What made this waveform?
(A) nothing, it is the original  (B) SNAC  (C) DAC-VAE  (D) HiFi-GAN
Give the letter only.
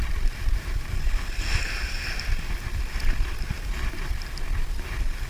A